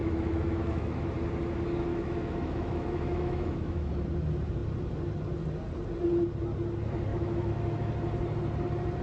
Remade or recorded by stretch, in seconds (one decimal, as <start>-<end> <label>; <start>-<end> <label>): 0.0-1.1 remade; 1.1-1.9 recorded; 1.9-3.9 remade; 3.9-7.1 recorded; 7.1-7.9 remade; 7.9-9.0 recorded